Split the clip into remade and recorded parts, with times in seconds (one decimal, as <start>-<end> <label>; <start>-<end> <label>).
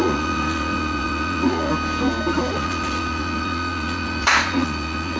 0.0-1.7 remade; 1.7-2.5 recorded; 2.5-5.2 remade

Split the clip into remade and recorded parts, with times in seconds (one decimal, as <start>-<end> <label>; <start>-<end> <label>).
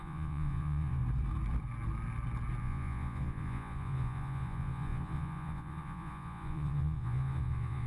0.0-1.0 remade; 1.0-2.6 recorded; 2.6-7.9 remade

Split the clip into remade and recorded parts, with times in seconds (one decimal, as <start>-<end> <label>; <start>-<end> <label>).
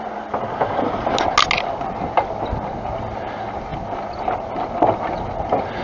0.0-5.8 recorded